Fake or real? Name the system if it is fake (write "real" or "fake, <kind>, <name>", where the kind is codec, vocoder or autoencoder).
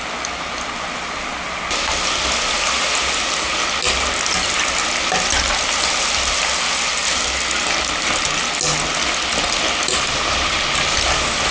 real